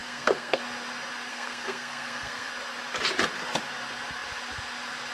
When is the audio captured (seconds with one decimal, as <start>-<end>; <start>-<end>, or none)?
0.6-1.3; 2.5-5.1